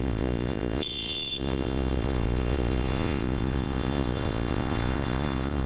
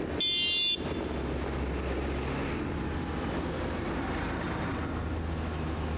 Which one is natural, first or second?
second